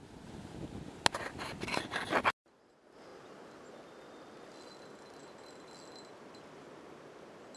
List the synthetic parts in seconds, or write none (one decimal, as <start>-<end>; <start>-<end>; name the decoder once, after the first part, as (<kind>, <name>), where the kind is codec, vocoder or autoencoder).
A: none